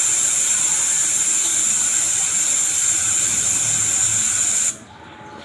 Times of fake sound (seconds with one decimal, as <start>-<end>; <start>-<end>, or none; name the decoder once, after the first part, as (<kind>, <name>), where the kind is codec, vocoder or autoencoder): none